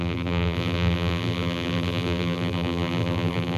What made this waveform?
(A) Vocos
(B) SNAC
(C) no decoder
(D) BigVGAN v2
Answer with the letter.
D